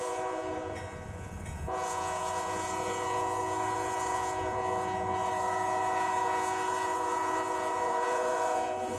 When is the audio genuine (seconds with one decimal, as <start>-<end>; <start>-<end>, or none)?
none